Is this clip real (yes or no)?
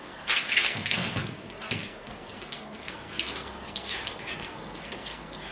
no